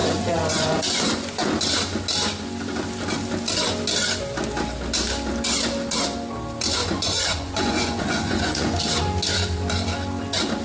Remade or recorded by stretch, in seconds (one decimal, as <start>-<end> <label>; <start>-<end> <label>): 0.0-1.5 remade; 1.5-6.8 recorded; 6.8-8.8 remade; 8.8-10.6 recorded